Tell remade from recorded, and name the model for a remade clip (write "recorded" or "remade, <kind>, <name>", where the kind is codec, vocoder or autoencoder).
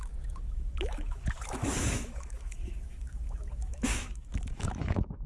remade, autoencoder, DAC-VAE